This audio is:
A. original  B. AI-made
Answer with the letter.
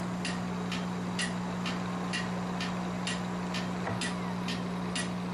A